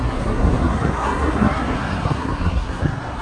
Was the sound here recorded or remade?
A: remade